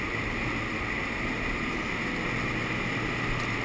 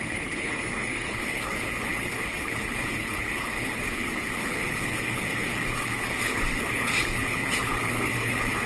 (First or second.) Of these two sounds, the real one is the first